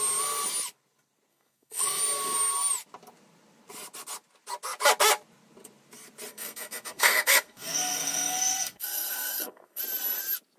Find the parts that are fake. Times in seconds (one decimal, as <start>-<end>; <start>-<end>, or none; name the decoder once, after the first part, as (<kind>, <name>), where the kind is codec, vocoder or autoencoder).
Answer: 1.3-2.0 (codec, SNAC); 6.3-9.8